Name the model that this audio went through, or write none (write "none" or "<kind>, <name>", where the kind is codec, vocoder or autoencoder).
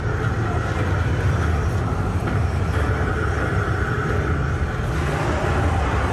none